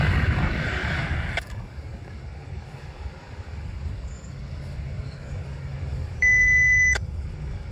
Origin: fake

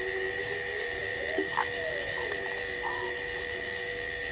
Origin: fake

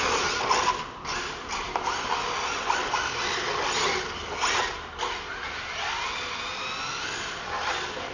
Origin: real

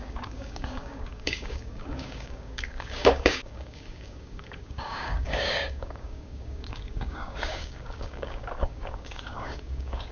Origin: fake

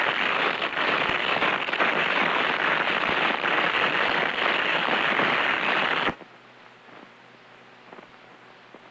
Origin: real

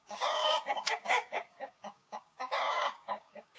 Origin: fake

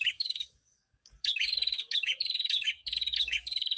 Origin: fake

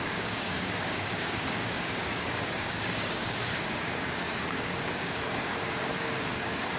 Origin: fake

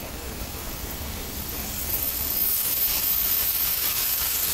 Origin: fake